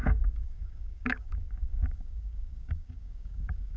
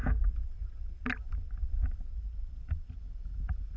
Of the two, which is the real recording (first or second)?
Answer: second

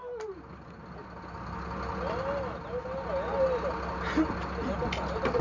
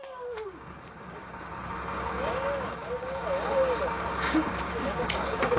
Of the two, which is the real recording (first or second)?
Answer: first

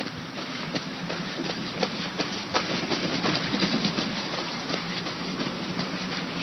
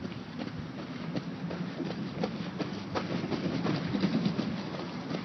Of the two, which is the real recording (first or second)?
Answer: second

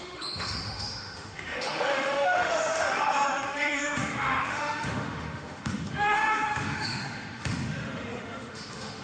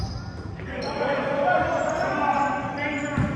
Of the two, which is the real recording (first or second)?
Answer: second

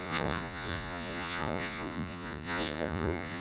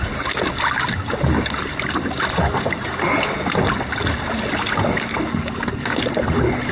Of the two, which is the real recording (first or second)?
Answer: second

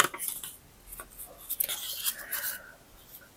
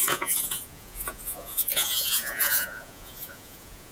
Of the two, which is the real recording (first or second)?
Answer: first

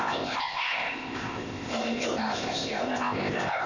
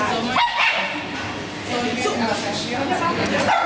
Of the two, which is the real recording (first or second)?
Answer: second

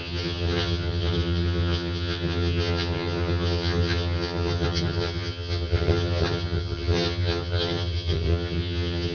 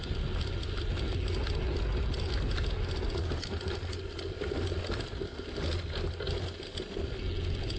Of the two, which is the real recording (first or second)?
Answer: second